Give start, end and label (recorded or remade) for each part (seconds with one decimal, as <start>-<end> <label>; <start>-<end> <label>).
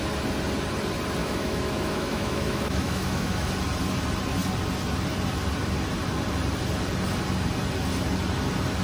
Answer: 0.0-1.2 recorded; 1.2-3.5 remade; 3.5-8.8 recorded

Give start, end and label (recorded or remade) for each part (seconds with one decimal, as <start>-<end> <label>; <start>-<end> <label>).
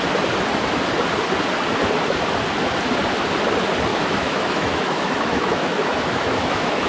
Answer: 0.0-3.9 recorded; 3.9-6.9 remade